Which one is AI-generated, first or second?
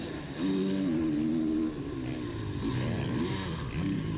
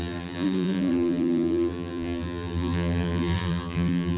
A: second